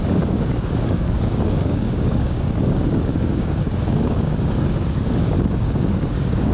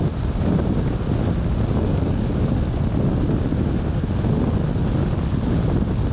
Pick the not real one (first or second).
first